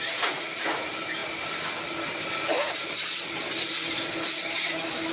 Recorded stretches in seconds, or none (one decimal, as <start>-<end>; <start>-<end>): 0.0-5.1